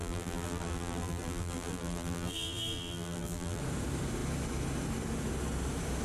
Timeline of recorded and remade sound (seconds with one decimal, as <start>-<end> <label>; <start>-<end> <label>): 0.0-3.6 remade; 3.6-6.0 recorded